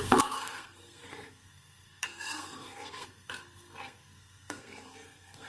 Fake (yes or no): yes